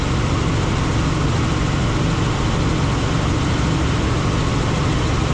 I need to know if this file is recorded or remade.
recorded